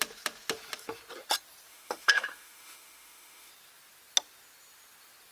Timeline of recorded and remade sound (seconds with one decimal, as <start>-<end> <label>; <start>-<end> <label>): 0.0-1.7 recorded; 1.7-3.5 remade; 3.5-5.3 recorded